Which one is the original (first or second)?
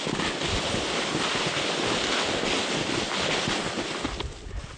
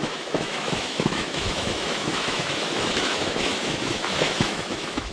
first